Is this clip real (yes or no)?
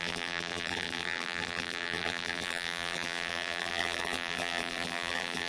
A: no